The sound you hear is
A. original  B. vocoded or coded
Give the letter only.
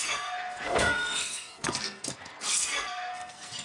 B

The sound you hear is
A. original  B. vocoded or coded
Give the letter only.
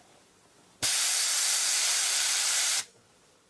B